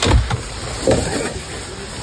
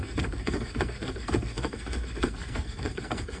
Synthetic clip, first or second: second